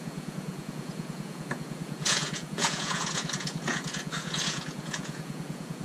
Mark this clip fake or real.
fake